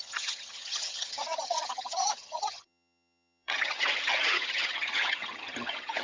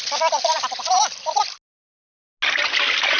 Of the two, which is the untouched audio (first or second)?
second